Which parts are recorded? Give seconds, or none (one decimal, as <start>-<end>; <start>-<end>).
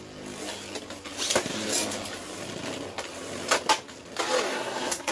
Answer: 0.0-4.5